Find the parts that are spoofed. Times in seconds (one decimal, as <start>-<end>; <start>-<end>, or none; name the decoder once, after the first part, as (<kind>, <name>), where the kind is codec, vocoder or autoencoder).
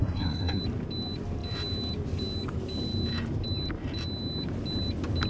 0.0-0.6 (codec, SNAC)